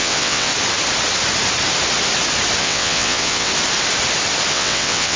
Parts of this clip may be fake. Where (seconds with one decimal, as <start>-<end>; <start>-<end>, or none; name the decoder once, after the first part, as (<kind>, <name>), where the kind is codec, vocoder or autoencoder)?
0.0-0.5 (vocoder, WaveNeXt); 2.6-3.5; 4.5-5.2